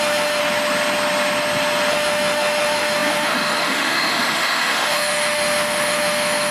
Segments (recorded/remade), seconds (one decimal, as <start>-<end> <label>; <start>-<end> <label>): 0.0-0.4 remade; 0.4-1.9 recorded; 1.9-6.5 remade